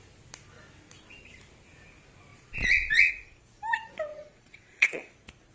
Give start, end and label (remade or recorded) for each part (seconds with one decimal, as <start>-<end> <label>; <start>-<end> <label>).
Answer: 0.0-2.3 recorded; 2.3-3.1 remade; 3.1-4.1 recorded; 4.1-5.1 remade; 5.1-5.5 recorded